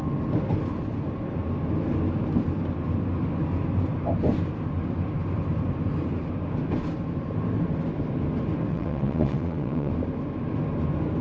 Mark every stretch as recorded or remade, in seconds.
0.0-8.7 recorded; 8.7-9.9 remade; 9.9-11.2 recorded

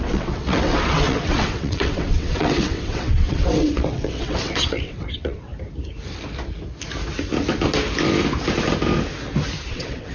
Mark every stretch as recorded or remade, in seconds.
0.0-5.5 remade; 5.5-9.7 recorded; 9.7-10.1 remade